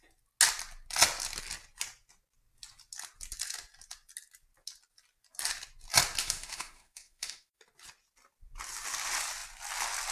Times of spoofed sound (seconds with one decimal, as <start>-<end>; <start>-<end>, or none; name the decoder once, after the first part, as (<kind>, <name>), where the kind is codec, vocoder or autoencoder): 6.2-7.6 (autoencoder, DAC-VAE)